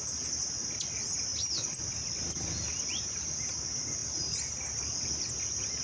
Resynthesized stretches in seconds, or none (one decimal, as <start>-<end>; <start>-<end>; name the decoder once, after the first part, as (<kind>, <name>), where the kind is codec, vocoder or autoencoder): none